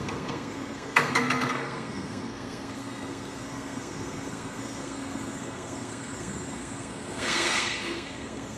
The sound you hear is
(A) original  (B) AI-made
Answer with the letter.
B